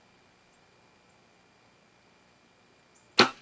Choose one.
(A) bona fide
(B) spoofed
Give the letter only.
A